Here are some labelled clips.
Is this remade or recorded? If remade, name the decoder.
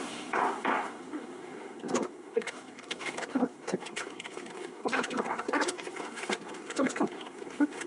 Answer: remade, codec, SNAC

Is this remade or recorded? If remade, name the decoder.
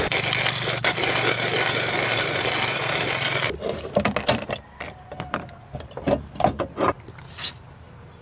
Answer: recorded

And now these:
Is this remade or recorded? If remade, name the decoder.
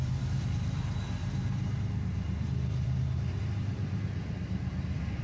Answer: remade, vocoder, BigVGAN v2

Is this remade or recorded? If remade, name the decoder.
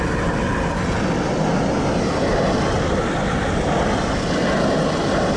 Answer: recorded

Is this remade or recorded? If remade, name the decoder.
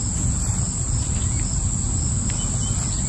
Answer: recorded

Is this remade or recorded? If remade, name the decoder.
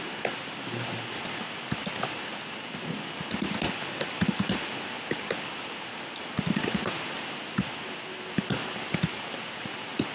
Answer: recorded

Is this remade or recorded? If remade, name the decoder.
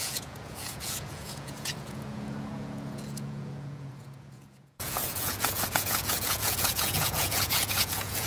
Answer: remade, vocoder, Vocos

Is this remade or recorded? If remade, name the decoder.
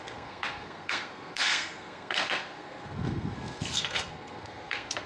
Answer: remade, codec, SNAC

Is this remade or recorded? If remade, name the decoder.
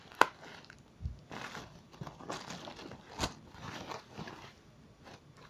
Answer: recorded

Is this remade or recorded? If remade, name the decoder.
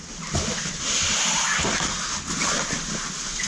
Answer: recorded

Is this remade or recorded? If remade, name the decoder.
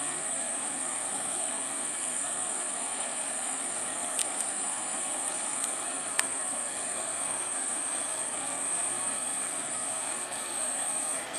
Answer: remade, codec, SNAC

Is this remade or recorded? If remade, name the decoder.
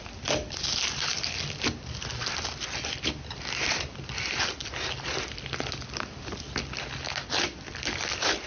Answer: recorded